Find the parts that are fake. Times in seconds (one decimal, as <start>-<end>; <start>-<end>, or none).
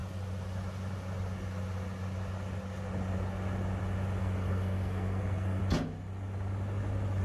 4.2-5.6